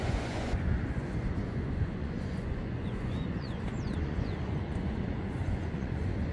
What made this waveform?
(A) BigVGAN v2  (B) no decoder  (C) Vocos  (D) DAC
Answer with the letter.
C